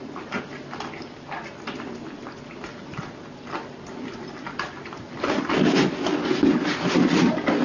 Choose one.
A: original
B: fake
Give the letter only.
A